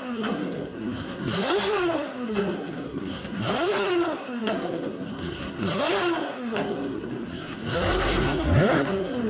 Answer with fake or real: fake